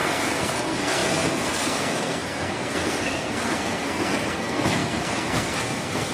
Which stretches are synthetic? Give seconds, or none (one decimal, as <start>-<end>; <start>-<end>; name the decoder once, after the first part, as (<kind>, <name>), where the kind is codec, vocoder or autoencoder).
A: 0.0-6.1 (codec, SNAC)